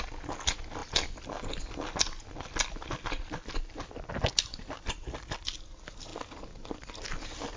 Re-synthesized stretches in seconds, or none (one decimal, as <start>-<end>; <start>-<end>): none

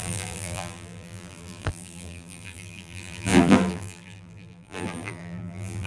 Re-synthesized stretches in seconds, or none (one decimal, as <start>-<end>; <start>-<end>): 0.0-5.9

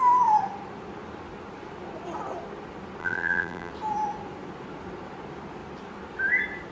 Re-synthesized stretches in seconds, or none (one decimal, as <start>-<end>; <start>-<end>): 3.0-3.7

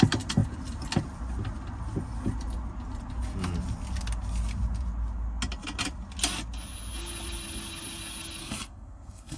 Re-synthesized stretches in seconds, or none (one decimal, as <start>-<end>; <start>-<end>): 8.4-9.4

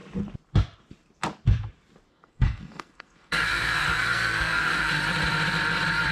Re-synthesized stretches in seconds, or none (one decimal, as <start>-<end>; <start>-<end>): 2.1-4.9